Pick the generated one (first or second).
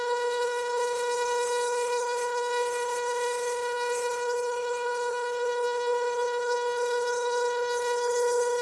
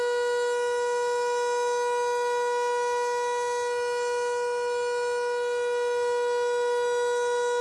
first